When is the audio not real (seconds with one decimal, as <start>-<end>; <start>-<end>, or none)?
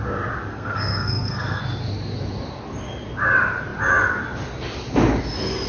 0.5-1.6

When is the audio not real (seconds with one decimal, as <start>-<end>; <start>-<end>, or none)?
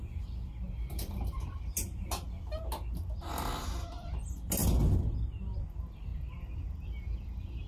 none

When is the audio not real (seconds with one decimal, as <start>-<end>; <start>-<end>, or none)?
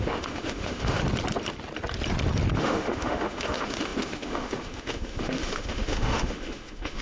0.0-1.0; 2.6-7.0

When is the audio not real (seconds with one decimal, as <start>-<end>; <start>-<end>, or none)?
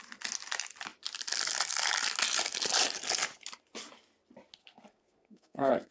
4.6-5.9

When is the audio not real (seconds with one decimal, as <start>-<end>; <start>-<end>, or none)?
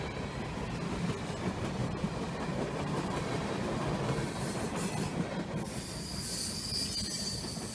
1.8-4.0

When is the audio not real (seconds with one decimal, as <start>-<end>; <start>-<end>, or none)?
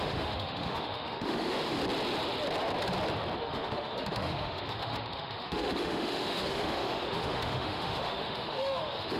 0.0-1.8; 3.4-9.2